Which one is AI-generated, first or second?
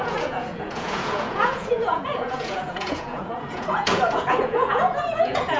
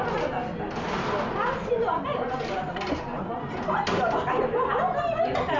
first